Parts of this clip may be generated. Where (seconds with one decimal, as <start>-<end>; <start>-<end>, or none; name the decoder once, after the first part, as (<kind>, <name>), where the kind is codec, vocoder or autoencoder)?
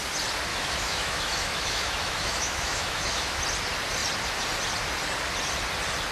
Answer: 0.5-3.4 (autoencoder, DAC-VAE)